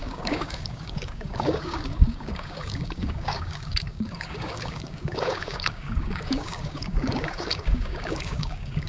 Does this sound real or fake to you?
fake